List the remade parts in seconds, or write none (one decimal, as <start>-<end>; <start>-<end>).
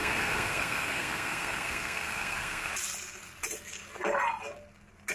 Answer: 0.0-2.7